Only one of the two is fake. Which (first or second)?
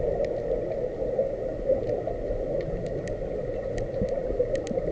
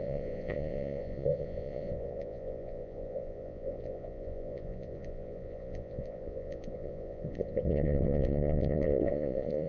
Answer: second